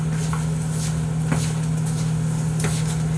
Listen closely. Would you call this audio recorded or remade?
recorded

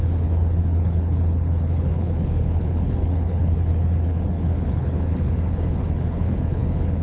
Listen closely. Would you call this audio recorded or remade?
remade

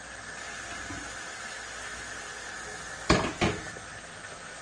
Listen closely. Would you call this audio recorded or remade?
recorded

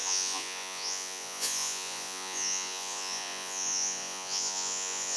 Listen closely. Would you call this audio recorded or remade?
remade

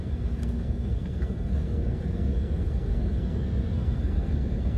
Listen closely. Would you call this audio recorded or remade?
remade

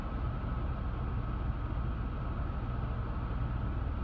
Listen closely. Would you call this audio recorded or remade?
recorded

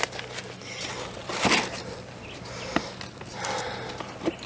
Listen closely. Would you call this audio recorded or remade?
recorded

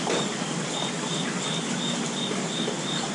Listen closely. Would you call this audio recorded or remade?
recorded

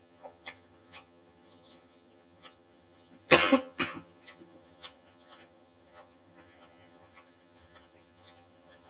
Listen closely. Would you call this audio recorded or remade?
remade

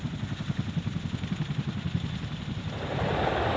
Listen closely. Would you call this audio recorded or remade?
recorded